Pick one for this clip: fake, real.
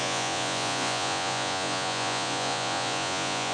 fake